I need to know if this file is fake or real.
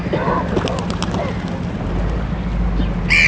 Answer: real